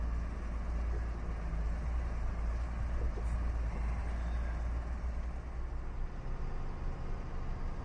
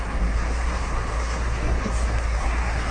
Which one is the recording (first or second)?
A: first